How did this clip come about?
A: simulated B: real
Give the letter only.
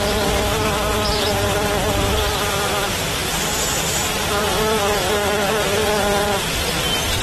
B